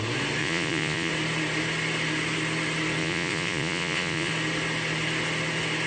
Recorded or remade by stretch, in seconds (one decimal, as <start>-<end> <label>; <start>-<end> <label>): 0.0-0.4 recorded; 0.4-1.1 remade; 1.1-3.0 recorded; 3.0-4.3 remade; 4.3-5.9 recorded